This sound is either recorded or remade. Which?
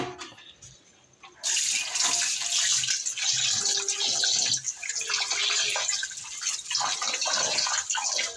recorded